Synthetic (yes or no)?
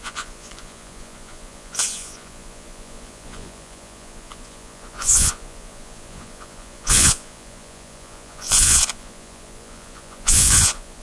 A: yes